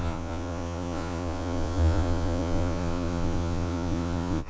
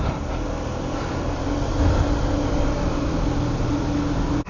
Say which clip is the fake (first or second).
first